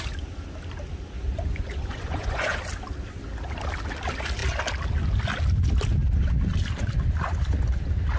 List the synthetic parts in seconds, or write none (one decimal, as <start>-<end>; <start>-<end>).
1.5-2.6